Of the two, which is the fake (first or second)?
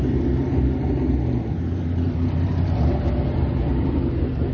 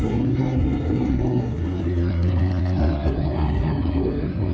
second